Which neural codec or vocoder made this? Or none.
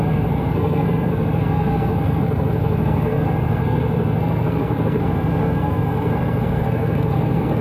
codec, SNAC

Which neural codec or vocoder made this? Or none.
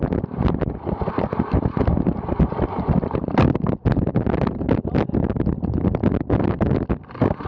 none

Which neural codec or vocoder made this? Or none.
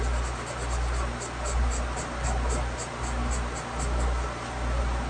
none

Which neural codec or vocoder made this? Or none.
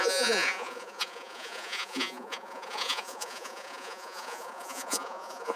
vocoder, Vocos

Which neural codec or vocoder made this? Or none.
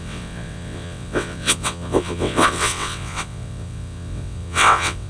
vocoder, WaveNeXt